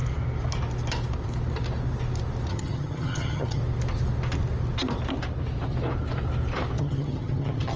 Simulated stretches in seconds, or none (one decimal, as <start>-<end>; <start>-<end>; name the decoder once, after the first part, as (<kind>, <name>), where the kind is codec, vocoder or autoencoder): 2.5-3.6 (vocoder, HiFi-GAN); 6.8-7.8